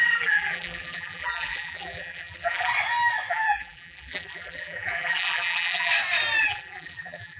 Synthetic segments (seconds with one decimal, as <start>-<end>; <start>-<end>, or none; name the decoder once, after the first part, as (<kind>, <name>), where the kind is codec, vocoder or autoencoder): 0.0-2.7 (vocoder, BigVGAN v2); 3.3-5.9; 6.4-7.4